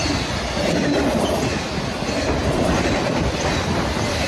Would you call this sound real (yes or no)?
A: yes